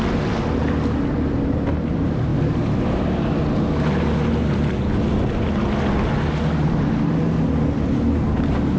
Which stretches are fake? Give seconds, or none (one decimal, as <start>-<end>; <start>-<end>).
none

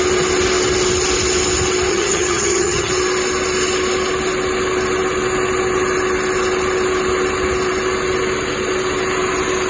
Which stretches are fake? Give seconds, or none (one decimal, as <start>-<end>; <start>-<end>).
1.9-2.9